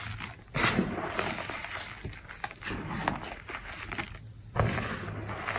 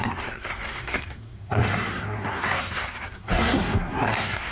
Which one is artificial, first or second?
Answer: second